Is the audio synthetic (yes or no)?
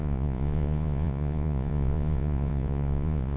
yes